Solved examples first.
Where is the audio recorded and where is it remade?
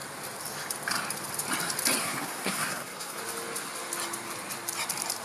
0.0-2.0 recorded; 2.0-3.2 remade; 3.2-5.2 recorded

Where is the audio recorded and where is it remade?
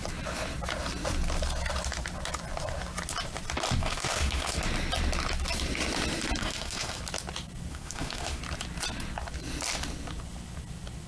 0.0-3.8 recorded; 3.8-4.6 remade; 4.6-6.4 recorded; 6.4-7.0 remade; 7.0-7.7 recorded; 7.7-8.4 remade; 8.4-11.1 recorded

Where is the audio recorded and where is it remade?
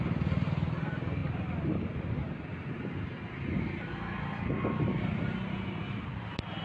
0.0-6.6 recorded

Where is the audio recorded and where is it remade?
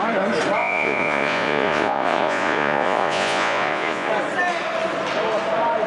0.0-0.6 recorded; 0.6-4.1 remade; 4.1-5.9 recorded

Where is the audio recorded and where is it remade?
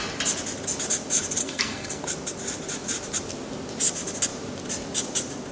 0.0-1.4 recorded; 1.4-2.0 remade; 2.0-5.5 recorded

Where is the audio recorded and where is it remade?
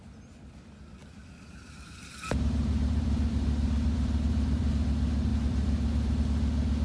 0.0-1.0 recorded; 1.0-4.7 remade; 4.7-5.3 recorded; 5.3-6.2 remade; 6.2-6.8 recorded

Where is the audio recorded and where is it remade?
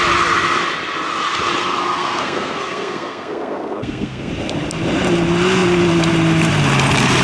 0.0-1.8 recorded; 1.8-4.3 remade; 4.3-7.2 recorded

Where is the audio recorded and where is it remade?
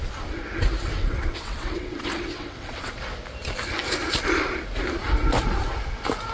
0.0-1.0 recorded; 1.0-3.0 remade; 3.0-6.3 recorded